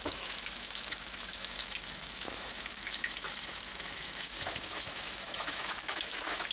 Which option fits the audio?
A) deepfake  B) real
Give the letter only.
A